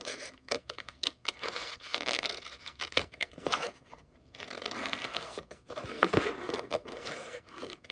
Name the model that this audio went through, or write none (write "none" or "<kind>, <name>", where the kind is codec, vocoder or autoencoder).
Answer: codec, SNAC